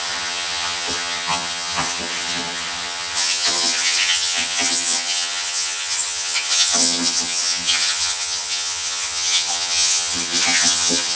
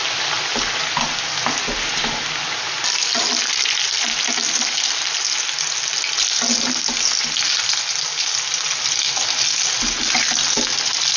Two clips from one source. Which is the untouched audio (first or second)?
second